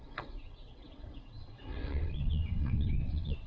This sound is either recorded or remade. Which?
remade